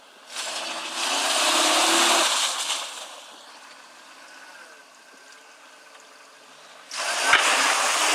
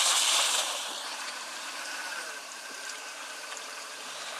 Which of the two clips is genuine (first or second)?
first